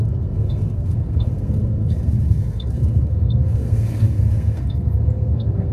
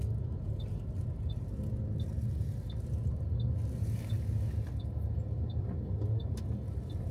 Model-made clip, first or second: first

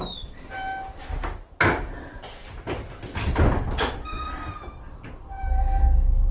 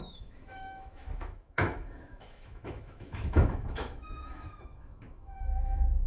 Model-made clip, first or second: second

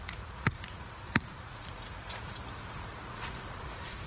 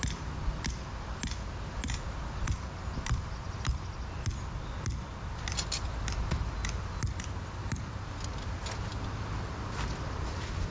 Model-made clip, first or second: first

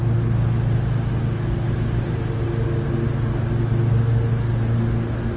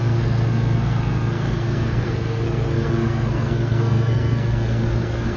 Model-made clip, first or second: second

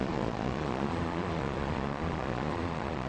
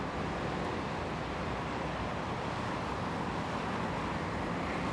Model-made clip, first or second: first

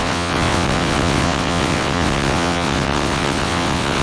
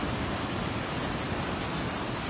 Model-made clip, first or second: first